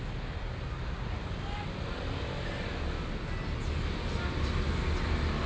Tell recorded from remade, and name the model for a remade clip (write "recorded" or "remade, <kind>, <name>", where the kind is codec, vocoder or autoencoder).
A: recorded